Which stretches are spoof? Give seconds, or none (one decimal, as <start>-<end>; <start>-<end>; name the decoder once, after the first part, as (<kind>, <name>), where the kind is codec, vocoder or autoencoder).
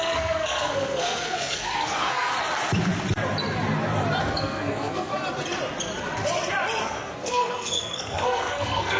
0.0-2.3 (codec, SNAC); 4.2-5.1; 6.8-9.0